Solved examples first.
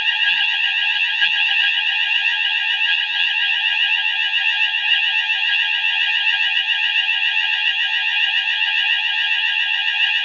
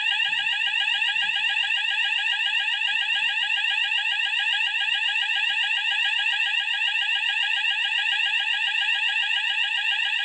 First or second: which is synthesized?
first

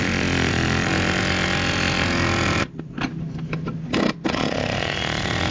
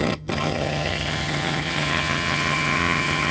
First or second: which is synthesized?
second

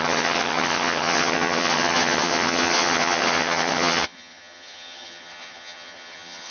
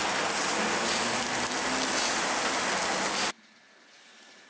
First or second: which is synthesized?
first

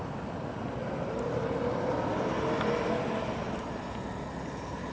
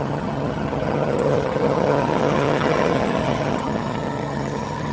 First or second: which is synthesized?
second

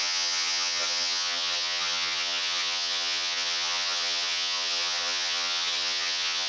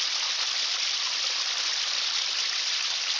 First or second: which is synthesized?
first